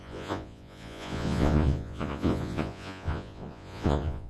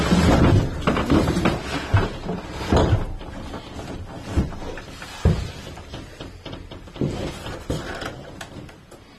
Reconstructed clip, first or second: first